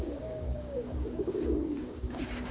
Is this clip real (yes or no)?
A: no